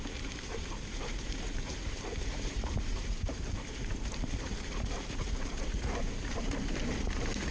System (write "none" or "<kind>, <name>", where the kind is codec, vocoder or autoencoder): vocoder, BigVGAN v2